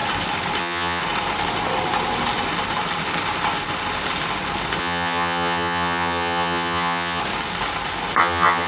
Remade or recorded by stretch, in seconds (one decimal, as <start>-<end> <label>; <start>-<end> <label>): 0.0-0.6 recorded; 0.6-1.0 remade; 1.0-4.8 recorded; 4.8-7.2 remade; 7.2-8.2 recorded; 8.2-8.7 remade